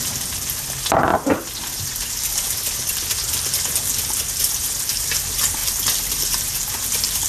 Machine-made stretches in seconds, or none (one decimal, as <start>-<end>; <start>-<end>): 1.1-2.1; 5.6-6.6